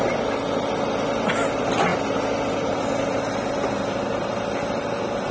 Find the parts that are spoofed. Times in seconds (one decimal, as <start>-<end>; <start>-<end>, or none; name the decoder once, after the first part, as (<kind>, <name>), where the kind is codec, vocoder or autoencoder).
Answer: none